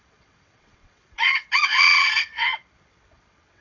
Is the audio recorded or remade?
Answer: remade